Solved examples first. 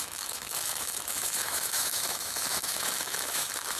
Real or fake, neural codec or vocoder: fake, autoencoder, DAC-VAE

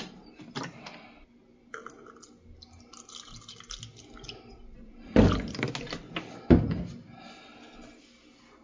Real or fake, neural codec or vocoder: real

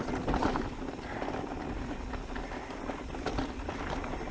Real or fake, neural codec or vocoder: real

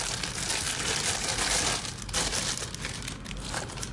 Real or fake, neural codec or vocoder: real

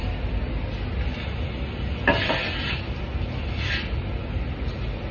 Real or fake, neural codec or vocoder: real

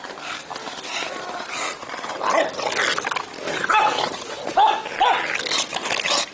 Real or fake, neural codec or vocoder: real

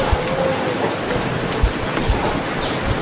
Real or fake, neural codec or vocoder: real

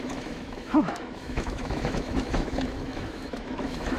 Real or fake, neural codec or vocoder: fake, autoencoder, DAC-VAE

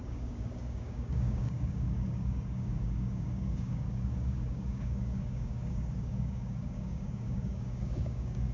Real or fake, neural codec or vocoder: fake, codec, DAC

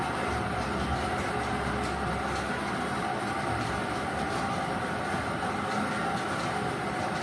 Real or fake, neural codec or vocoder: real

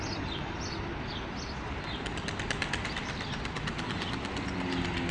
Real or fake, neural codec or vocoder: real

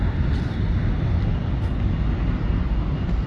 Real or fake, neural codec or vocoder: real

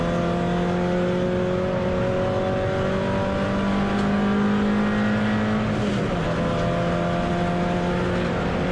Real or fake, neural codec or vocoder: real